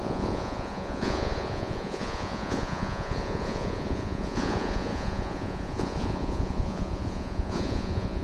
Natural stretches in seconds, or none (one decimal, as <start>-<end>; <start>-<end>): none